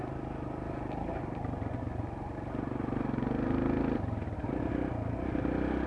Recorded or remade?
recorded